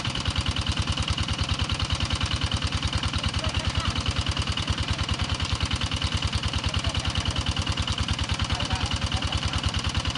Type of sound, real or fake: fake